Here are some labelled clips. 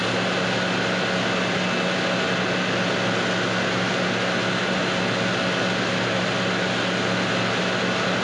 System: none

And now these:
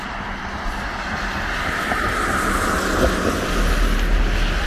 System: none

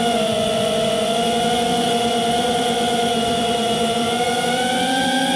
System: vocoder, Vocos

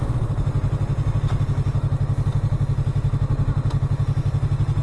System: none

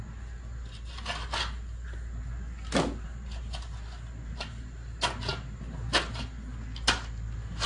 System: none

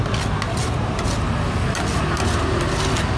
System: none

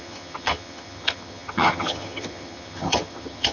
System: vocoder, HiFi-GAN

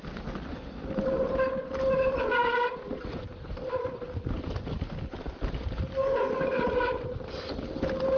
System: none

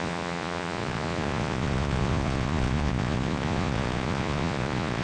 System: vocoder, Vocos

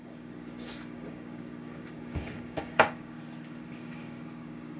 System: codec, DAC